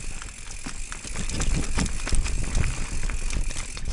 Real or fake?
real